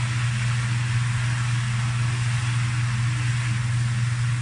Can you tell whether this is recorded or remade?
recorded